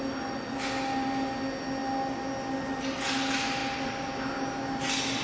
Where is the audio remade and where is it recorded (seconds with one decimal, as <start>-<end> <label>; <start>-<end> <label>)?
0.0-5.2 recorded